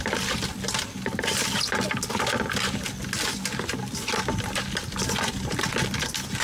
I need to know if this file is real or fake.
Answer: real